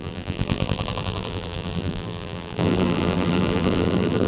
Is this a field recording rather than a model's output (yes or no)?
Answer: no